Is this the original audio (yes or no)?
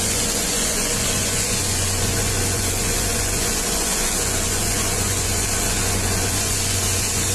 no